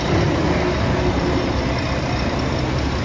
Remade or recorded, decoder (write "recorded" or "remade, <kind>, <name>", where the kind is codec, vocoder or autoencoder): recorded